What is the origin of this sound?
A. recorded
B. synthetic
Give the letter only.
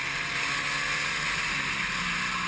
A